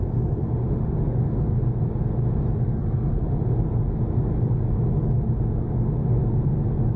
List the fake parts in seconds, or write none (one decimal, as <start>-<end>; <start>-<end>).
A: 0.6-1.4